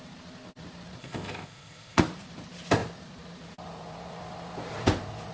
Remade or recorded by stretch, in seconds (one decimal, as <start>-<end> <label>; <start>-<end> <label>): 0.0-1.0 recorded; 1.0-2.0 remade; 2.0-5.3 recorded